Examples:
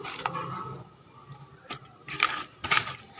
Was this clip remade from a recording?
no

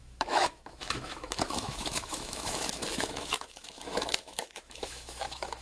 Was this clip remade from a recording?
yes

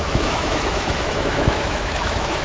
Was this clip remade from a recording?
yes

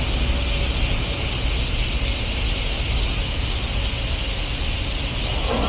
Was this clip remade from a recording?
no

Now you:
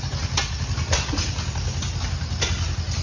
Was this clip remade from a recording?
no